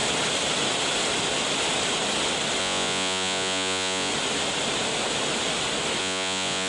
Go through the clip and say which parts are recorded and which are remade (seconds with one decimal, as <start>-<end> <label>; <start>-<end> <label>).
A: 0.0-2.6 recorded; 2.6-4.1 remade; 4.1-6.0 recorded; 6.0-6.7 remade